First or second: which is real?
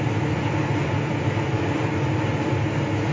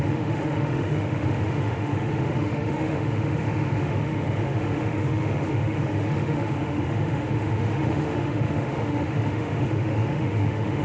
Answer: first